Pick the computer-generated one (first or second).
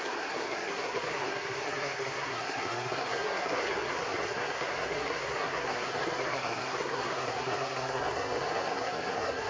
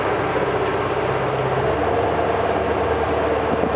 first